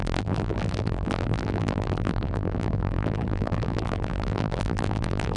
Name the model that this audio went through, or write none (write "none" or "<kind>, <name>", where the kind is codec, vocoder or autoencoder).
vocoder, BigVGAN v2